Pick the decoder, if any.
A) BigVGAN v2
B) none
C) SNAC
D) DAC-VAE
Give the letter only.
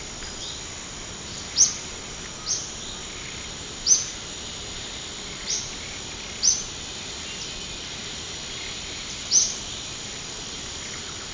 B